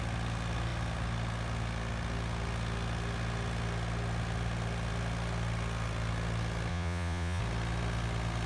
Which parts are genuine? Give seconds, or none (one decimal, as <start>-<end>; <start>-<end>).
0.0-6.7; 7.4-8.5